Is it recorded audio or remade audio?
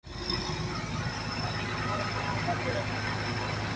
recorded